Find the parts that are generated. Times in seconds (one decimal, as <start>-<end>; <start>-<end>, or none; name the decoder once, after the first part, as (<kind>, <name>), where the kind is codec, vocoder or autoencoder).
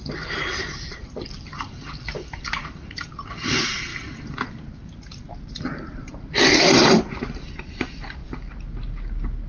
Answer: 0.0-3.9 (vocoder, BigVGAN v2); 5.5-8.2